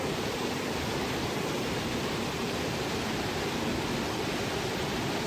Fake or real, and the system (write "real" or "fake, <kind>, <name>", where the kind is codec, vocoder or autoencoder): real